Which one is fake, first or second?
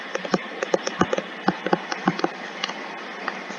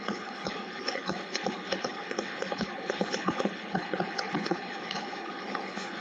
second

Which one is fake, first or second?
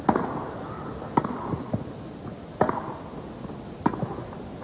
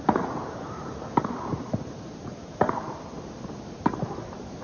second